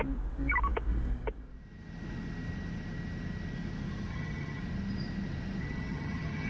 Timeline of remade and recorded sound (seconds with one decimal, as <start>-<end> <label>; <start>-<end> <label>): 0.0-4.1 recorded; 4.1-4.6 remade; 4.6-5.6 recorded; 5.6-6.5 remade